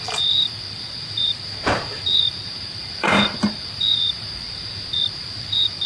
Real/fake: fake